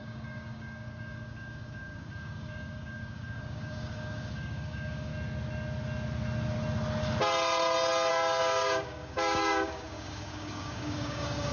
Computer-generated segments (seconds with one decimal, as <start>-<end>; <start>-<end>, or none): 0.0-5.1; 8.1-11.5